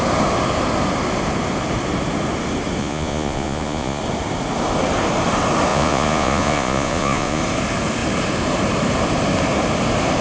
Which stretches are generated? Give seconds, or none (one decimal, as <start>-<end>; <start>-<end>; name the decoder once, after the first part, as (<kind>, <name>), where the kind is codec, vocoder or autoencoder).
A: 2.8-4.0 (vocoder, Vocos); 5.7-7.4